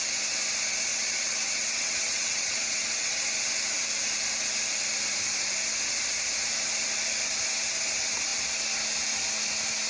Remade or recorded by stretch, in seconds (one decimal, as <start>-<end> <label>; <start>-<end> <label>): 0.0-0.9 recorded; 0.9-3.2 remade; 3.2-9.9 recorded